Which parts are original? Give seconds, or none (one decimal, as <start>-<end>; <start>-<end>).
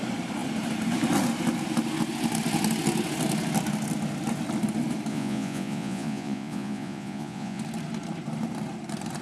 0.0-5.1; 7.6-9.2